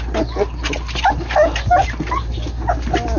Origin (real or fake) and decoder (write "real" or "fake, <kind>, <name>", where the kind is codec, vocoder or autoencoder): real